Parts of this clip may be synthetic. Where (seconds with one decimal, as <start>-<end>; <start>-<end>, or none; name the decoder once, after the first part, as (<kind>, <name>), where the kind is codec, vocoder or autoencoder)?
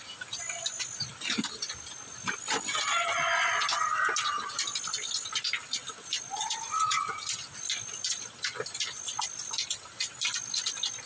none